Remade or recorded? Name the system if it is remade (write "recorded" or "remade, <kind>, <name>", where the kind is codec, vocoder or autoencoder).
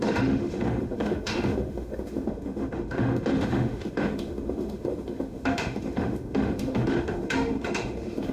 remade, autoencoder, DAC-VAE